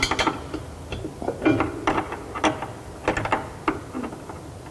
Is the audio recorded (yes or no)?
yes